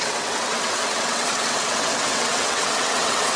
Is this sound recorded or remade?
remade